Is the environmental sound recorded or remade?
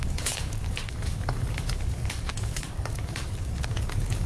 remade